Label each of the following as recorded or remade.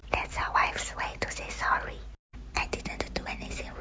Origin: recorded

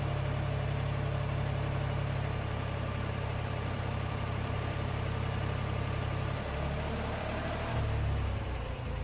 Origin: remade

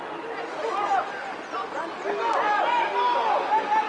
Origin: recorded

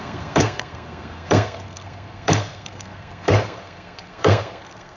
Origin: remade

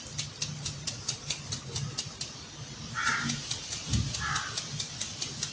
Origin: recorded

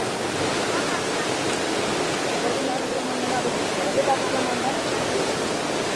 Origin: recorded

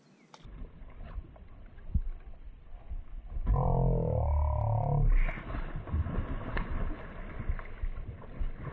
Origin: recorded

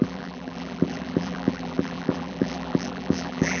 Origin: remade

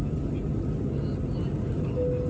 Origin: recorded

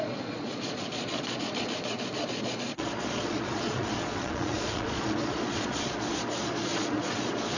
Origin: remade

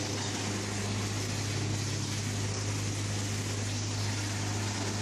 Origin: recorded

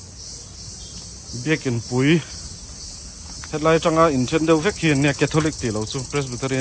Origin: recorded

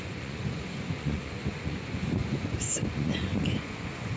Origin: remade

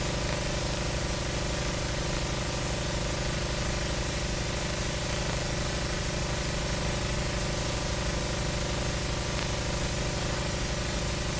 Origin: recorded